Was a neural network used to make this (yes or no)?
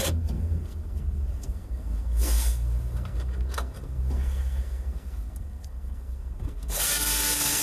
yes